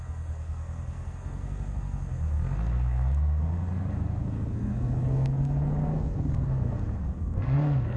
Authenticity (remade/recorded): remade